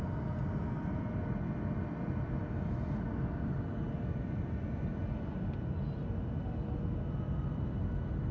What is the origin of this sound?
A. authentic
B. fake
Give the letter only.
A